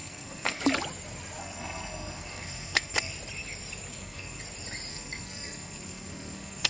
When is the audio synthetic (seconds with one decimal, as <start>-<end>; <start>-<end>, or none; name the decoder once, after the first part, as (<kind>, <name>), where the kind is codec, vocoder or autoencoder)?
0.0-0.6 (codec, SNAC); 1.4-3.1; 3.9-4.4; 4.9-6.7